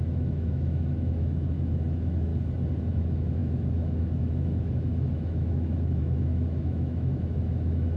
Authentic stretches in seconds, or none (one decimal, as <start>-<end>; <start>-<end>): 2.3-2.9